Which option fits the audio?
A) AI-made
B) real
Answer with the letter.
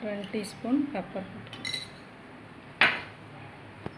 B